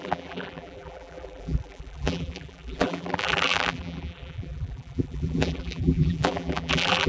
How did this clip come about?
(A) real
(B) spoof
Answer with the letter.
B